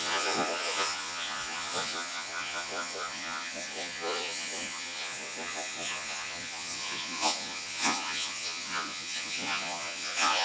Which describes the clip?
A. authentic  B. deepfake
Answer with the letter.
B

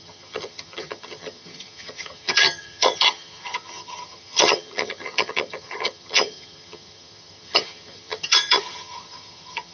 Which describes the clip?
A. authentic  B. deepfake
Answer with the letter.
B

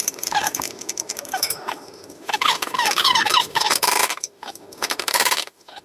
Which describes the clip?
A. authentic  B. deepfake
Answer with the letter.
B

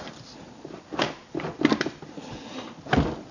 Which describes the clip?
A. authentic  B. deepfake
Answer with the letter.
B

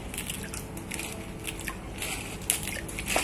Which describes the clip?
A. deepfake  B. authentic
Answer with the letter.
B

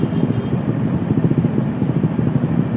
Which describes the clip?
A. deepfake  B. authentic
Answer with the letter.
B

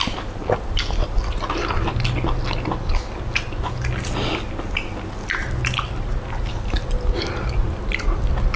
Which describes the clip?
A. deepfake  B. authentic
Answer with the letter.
B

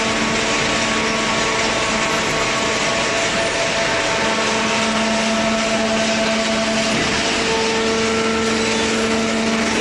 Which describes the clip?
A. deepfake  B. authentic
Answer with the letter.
B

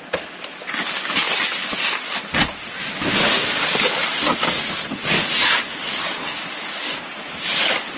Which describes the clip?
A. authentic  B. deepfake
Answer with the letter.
A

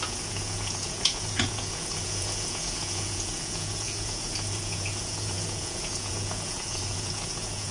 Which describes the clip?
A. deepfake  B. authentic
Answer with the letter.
A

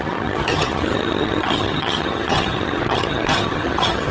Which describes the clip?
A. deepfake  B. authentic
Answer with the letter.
A